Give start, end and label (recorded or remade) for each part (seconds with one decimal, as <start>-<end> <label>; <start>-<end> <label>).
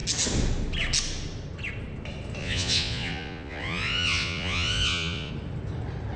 0.0-2.4 recorded; 2.4-5.3 remade; 5.3-6.2 recorded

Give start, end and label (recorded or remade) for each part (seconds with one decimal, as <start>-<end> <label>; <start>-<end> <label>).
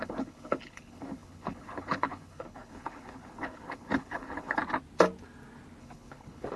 0.0-4.6 remade; 4.6-5.8 recorded; 5.8-6.6 remade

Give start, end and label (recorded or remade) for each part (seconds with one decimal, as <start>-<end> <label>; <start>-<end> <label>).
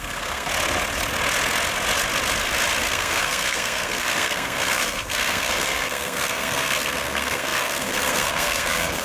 0.0-0.5 remade; 0.5-2.9 recorded; 2.9-9.0 remade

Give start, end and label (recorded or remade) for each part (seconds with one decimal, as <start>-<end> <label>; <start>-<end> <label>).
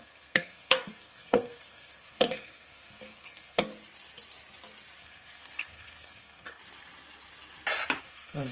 0.0-3.7 remade; 3.7-5.0 recorded; 5.0-6.6 remade; 6.6-8.0 recorded; 8.0-8.5 remade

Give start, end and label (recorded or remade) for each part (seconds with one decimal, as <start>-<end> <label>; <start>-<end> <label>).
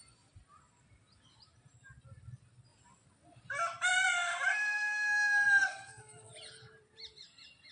0.0-4.5 recorded; 4.5-6.3 remade; 6.3-7.7 recorded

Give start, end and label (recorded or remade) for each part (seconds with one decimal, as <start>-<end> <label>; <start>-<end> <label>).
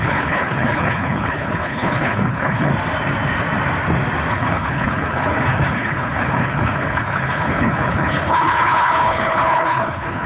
0.0-2.7 remade; 2.7-4.3 recorded; 4.3-10.3 remade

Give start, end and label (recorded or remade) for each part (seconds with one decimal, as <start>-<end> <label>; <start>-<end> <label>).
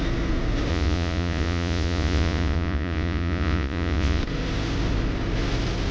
0.0-0.7 recorded; 0.7-4.2 remade; 4.2-5.9 recorded